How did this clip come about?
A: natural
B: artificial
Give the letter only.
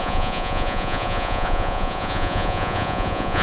B